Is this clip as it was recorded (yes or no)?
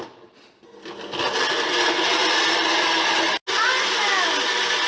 yes